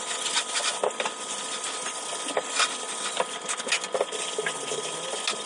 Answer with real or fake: real